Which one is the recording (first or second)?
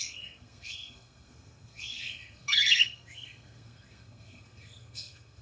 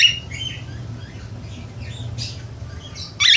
second